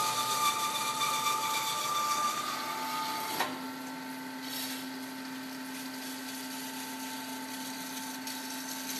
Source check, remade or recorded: recorded